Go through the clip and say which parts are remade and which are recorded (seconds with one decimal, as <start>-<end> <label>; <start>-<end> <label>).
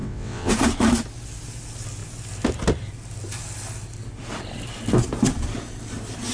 0.0-0.5 remade; 0.5-6.3 recorded